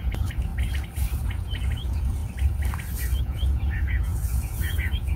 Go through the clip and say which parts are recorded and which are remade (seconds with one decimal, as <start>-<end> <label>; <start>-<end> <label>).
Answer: 0.0-0.5 remade; 0.5-1.2 recorded; 1.2-2.2 remade; 2.2-3.2 recorded; 3.2-5.2 remade